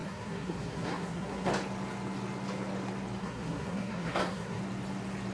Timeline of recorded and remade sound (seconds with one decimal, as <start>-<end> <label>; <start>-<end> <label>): 0.0-1.5 remade; 1.5-3.2 recorded; 3.2-4.6 remade; 4.6-5.3 recorded